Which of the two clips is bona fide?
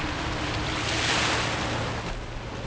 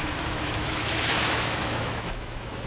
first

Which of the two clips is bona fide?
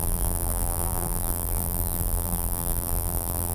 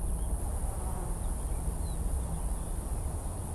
second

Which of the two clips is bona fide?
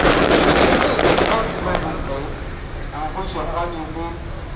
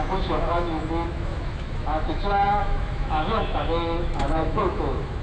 first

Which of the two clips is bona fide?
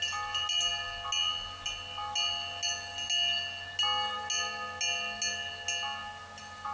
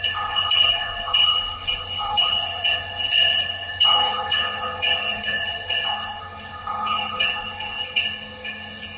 first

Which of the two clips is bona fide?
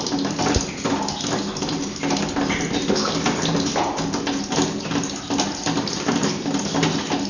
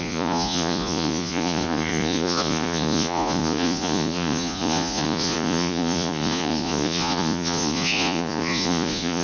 first